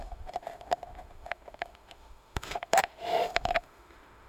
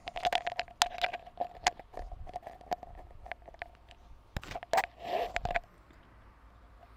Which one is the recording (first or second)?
second